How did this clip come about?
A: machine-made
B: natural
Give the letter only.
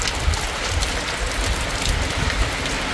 B